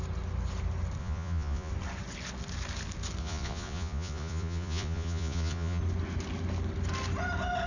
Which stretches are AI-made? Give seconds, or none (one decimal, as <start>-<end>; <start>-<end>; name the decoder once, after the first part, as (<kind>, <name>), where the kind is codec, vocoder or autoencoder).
1.0-1.7 (vocoder, Vocos); 3.2-5.8